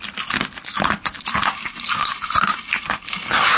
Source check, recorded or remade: recorded